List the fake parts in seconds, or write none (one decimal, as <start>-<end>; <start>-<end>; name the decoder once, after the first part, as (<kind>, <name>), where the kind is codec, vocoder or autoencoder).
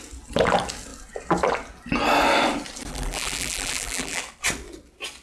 2.9-4.2 (vocoder, BigVGAN v2)